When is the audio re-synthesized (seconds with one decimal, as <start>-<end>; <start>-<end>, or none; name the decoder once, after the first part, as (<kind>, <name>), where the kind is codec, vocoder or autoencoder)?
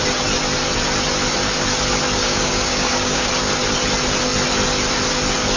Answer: 2.2-3.3 (codec, DAC)